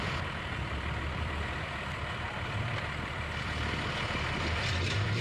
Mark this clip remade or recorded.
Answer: remade